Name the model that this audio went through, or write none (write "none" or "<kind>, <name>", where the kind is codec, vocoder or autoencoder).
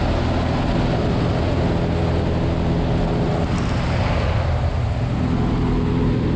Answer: none